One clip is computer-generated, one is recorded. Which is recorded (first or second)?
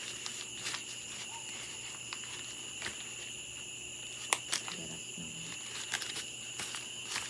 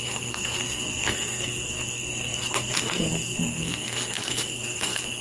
first